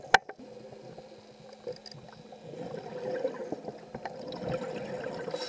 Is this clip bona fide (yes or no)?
yes